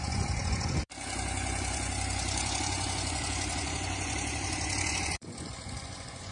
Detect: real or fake fake